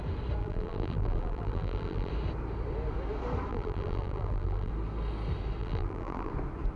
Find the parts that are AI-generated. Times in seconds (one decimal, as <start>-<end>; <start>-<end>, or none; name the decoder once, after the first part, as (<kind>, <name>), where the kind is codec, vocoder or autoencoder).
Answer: 0.4-2.1 (vocoder, BigVGAN v2); 3.5-4.7; 5.6-6.3